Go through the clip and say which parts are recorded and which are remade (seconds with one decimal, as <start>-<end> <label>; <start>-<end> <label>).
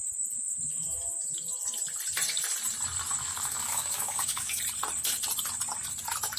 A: 0.0-3.2 recorded; 3.2-4.6 remade; 4.6-6.4 recorded